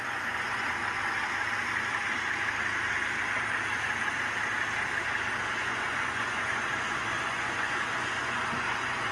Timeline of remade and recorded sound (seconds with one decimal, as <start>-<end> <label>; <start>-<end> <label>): 0.0-0.8 remade; 0.8-5.6 recorded; 5.6-9.1 remade